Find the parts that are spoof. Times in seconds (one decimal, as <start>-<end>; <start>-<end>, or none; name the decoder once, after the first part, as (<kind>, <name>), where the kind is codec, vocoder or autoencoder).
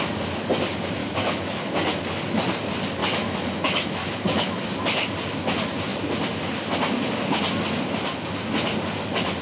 1.0-1.6 (autoencoder, DAC-VAE); 3.0-4.6